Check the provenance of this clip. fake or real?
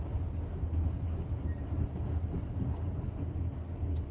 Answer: real